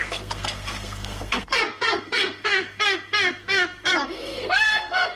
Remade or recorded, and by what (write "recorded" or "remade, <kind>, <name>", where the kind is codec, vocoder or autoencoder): remade, codec, SNAC